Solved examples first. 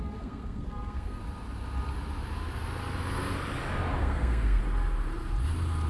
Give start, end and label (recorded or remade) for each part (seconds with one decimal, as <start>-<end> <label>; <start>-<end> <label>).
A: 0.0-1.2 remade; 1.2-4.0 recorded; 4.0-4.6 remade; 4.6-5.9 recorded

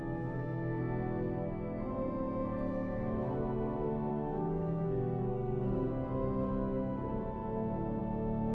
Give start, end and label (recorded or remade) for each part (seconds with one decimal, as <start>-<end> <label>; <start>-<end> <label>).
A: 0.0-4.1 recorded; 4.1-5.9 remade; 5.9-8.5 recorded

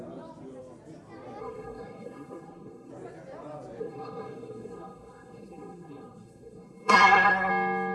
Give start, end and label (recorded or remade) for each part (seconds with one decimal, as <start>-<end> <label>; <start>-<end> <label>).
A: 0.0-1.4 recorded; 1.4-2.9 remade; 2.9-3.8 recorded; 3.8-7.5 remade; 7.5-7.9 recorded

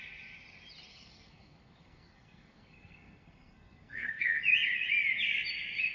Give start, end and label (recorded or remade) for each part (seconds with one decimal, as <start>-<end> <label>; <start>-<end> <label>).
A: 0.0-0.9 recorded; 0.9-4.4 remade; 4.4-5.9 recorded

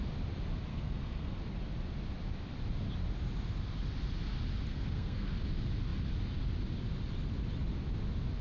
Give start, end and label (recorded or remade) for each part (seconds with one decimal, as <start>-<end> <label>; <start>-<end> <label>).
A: 0.0-0.7 recorded; 0.7-1.3 remade; 1.3-4.7 recorded; 4.7-5.3 remade; 5.3-8.4 recorded

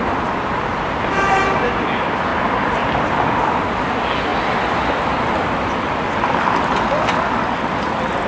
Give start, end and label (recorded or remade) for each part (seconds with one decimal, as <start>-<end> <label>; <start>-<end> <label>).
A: 0.0-8.3 recorded

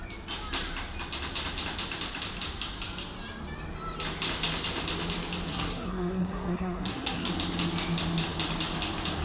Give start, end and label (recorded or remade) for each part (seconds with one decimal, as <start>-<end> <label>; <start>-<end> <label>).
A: 0.0-5.5 recorded; 5.5-7.3 remade; 7.3-9.2 recorded